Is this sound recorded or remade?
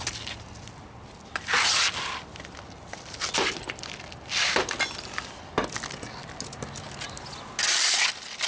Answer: recorded